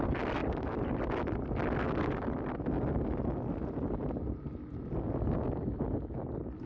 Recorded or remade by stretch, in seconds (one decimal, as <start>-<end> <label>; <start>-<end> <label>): 0.0-6.7 recorded